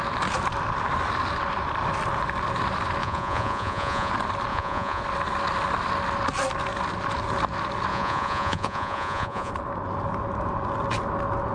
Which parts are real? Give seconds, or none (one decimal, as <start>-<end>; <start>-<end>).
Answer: 0.0-3.0; 4.1-4.5; 5.0-7.9; 9.5-11.5